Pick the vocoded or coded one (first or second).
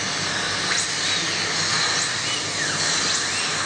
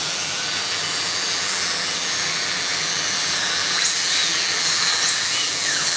second